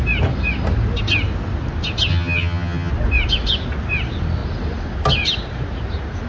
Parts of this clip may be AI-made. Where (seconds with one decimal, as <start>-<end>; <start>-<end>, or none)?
2.1-2.9